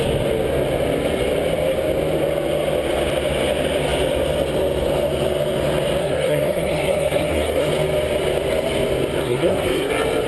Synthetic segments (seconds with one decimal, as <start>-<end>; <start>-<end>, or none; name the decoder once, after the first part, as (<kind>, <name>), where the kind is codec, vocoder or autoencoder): 6.0-7.7 (codec, SNAC); 9.2-9.9